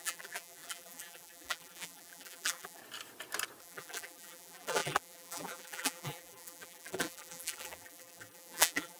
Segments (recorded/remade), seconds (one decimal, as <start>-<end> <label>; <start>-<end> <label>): 0.0-2.8 remade; 2.8-3.6 recorded; 3.6-9.0 remade